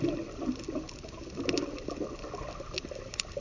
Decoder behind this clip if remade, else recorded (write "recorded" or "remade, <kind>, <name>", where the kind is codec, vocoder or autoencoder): recorded